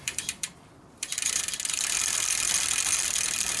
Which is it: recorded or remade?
remade